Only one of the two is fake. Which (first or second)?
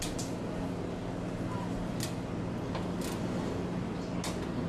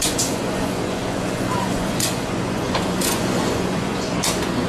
second